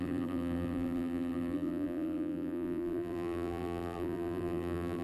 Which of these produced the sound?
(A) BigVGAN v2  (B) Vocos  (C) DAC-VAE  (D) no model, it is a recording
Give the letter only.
A